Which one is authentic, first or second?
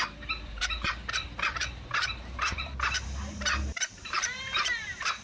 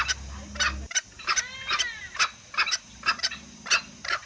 second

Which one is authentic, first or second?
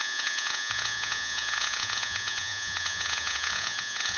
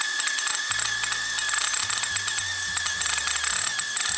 second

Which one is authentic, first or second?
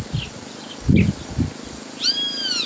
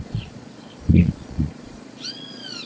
first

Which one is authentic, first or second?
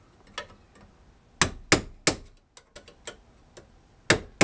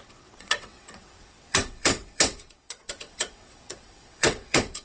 first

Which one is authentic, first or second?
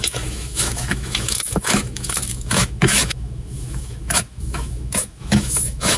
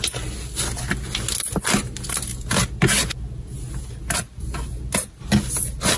second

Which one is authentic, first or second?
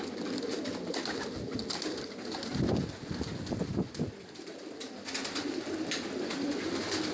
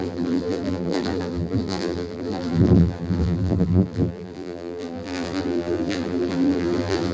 first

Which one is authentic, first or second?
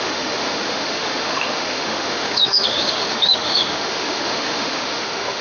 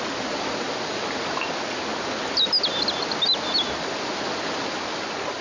second